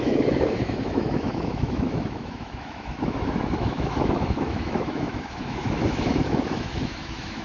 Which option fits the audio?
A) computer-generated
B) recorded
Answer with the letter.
A